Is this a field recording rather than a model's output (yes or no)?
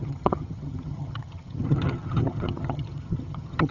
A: no